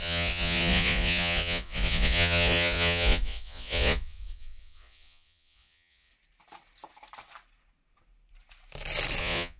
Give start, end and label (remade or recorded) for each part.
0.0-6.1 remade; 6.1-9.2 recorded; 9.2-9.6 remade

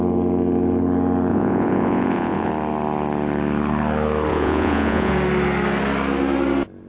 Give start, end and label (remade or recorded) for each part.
0.0-1.3 recorded; 1.3-2.5 remade; 2.5-4.3 recorded; 4.3-5.1 remade; 5.1-6.9 recorded

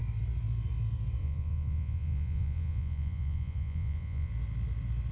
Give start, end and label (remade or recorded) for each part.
0.0-1.2 recorded; 1.2-4.3 remade; 4.3-5.1 recorded

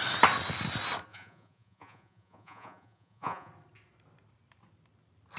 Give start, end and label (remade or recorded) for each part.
0.0-1.1 recorded; 1.1-3.5 remade; 3.5-5.4 recorded

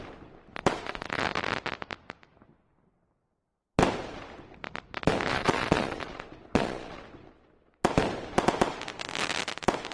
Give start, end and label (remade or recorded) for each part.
0.0-0.5 recorded; 0.5-1.2 remade; 1.2-5.3 recorded; 5.3-7.0 remade; 7.0-9.9 recorded

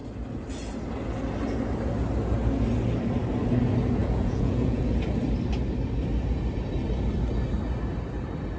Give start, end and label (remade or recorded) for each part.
0.0-4.0 recorded; 4.0-4.8 remade; 4.8-8.6 recorded